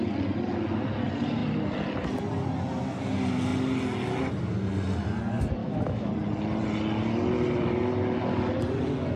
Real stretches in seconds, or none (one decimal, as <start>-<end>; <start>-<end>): 0.0-5.6; 6.1-9.2